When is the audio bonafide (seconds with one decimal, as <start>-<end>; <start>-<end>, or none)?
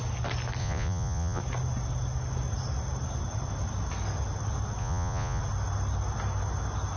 0.0-0.6; 1.4-4.8; 5.4-7.0